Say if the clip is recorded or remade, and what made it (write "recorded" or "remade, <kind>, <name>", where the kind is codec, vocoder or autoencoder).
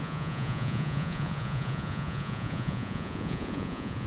remade, vocoder, Vocos